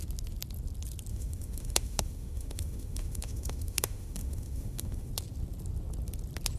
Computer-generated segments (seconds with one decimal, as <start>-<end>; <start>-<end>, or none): 1.1-5.1